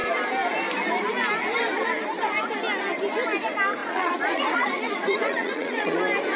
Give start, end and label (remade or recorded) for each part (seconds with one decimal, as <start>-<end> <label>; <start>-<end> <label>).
0.0-3.8 recorded; 3.8-6.0 remade; 6.0-6.4 recorded